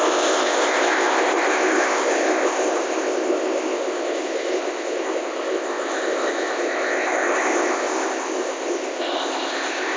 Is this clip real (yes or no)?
no